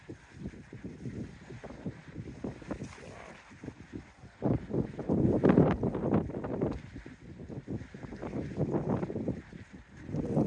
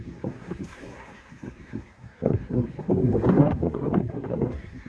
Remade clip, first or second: second